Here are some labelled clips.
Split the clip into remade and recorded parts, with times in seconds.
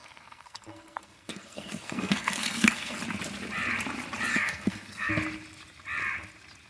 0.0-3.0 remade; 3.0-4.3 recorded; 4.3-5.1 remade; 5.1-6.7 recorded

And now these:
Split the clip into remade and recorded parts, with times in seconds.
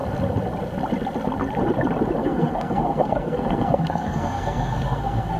0.0-2.2 recorded; 2.2-5.4 remade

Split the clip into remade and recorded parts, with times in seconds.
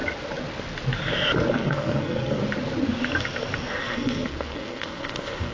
0.0-1.5 recorded; 1.5-2.4 remade; 2.4-3.8 recorded; 3.8-5.5 remade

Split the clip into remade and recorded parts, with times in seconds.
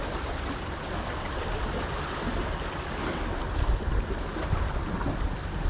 0.0-5.7 recorded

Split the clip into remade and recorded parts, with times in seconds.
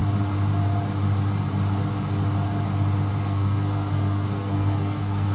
0.0-3.2 recorded; 3.2-5.3 remade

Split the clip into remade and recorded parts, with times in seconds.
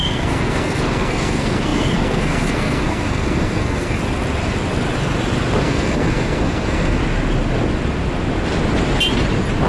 0.0-4.0 remade; 4.0-5.6 recorded; 5.6-7.0 remade; 7.0-9.7 recorded